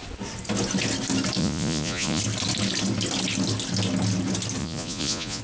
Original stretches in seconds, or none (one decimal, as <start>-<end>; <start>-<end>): 0.0-1.4; 2.2-4.6